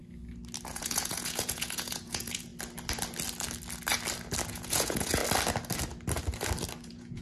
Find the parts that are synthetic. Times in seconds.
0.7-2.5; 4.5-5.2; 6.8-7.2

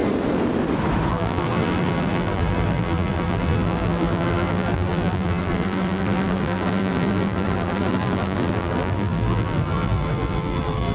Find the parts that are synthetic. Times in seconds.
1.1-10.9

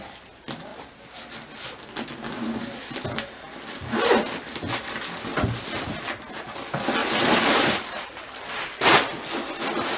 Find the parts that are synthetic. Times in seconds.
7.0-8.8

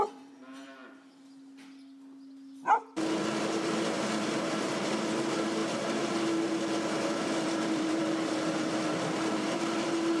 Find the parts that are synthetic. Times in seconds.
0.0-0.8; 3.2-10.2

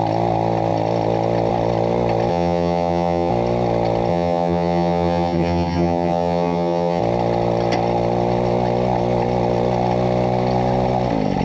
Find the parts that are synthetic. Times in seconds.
2.3-3.3; 4.1-7.0